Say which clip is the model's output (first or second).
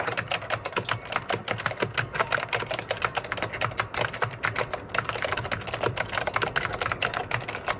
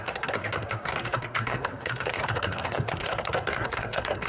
second